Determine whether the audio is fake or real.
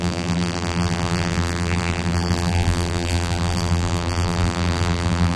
fake